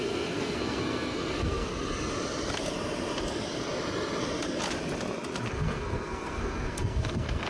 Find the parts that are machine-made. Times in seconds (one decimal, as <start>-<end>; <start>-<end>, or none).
0.0-1.7; 5.5-7.5